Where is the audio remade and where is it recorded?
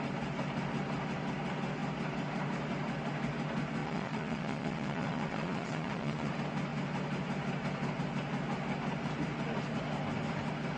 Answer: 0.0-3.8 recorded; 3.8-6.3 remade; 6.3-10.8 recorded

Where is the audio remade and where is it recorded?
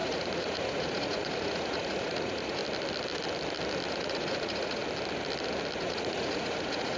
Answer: 0.0-2.6 remade; 2.6-3.9 recorded; 3.9-4.8 remade; 4.8-5.8 recorded; 5.8-7.0 remade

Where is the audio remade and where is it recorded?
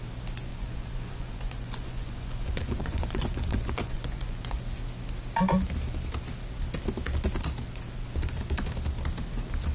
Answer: 0.0-0.5 recorded; 0.5-4.6 remade; 4.6-9.7 recorded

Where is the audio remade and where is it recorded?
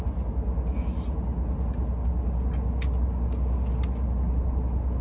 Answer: 0.0-5.0 recorded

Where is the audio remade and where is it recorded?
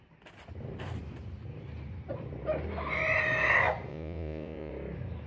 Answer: 0.0-3.9 recorded; 3.9-4.7 remade; 4.7-5.3 recorded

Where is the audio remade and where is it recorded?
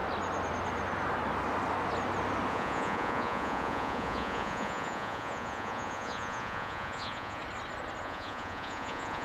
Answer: 0.0-2.5 recorded; 2.5-7.4 remade; 7.4-8.0 recorded; 8.0-9.2 remade